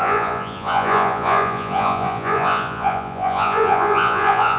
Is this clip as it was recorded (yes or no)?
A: no